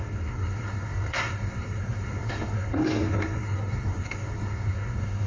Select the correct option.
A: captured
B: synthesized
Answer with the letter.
B